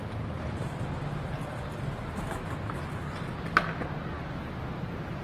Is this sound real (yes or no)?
yes